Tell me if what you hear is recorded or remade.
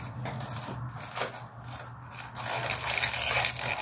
recorded